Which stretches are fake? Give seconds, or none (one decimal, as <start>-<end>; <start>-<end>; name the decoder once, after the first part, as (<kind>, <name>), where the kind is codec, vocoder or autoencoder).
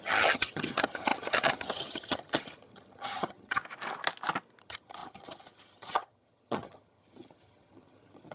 0.0-3.6 (vocoder, HiFi-GAN); 4.6-8.3